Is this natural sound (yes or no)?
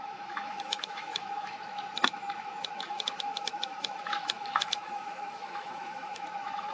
no